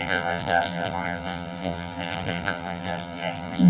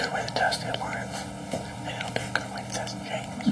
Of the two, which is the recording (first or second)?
second